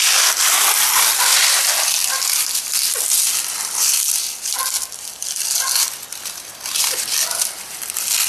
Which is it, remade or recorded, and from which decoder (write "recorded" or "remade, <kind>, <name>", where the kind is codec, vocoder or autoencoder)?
recorded